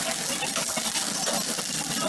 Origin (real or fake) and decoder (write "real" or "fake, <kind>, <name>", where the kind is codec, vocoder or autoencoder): real